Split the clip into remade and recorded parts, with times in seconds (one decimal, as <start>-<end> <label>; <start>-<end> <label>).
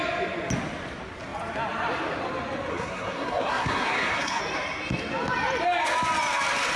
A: 0.0-2.7 recorded; 2.7-4.4 remade; 4.4-6.8 recorded